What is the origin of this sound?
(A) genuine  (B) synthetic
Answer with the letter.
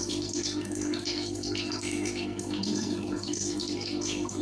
B